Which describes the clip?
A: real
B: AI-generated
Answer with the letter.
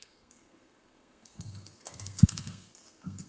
B